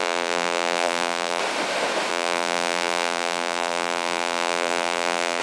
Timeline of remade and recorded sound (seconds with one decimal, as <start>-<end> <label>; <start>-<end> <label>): 0.0-1.4 remade; 1.4-2.1 recorded; 2.1-5.4 remade